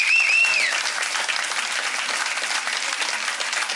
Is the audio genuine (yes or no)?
yes